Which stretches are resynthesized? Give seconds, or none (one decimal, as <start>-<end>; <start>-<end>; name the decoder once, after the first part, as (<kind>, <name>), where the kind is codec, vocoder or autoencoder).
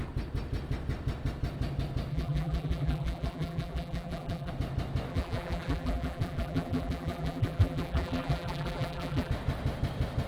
2.1-4.5 (vocoder, BigVGAN v2); 5.1-9.3